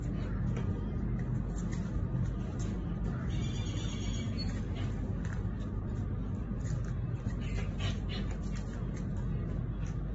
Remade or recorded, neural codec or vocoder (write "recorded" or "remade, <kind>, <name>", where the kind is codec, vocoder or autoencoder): recorded